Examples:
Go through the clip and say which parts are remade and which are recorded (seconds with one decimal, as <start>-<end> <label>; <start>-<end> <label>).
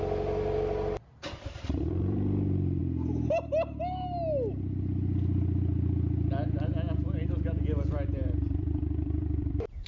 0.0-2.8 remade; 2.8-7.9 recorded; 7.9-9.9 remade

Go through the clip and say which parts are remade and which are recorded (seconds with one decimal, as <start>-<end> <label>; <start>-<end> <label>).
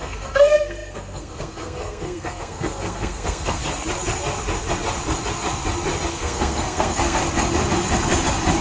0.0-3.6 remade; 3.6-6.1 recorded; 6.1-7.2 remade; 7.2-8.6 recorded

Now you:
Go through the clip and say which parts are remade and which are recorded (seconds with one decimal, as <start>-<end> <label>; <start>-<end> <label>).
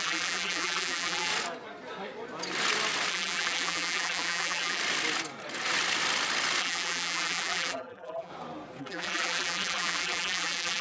0.0-1.3 remade; 1.3-3.1 recorded; 3.1-4.8 remade; 4.8-6.6 recorded; 6.6-8.3 remade; 8.3-8.8 recorded; 8.8-10.8 remade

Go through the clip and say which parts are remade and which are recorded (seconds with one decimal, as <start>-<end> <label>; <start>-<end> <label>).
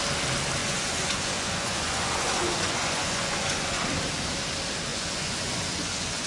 0.0-0.6 recorded; 0.6-3.8 remade; 3.8-4.9 recorded; 4.9-6.3 remade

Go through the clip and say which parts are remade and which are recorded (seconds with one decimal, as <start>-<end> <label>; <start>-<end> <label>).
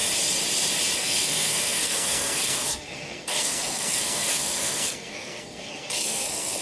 0.0-1.0 recorded; 1.0-6.6 remade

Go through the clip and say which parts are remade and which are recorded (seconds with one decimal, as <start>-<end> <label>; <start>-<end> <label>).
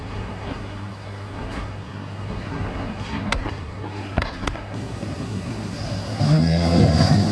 0.0-7.3 remade